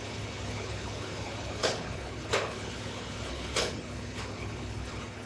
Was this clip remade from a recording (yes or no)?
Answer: yes